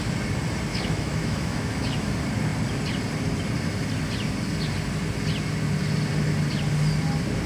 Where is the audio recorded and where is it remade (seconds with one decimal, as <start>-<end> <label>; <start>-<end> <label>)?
0.0-0.7 recorded; 0.7-2.1 remade; 2.1-7.5 recorded